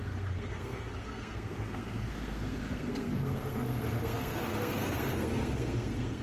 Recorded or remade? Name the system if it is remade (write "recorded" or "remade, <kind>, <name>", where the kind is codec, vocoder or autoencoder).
remade, codec, SNAC